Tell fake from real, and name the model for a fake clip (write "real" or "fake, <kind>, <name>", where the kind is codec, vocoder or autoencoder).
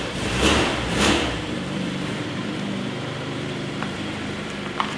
fake, vocoder, BigVGAN v2